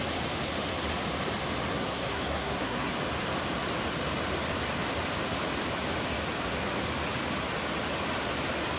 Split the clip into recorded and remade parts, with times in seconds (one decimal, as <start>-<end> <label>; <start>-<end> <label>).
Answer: 0.0-1.7 recorded; 1.7-2.9 remade; 2.9-8.8 recorded